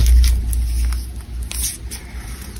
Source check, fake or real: real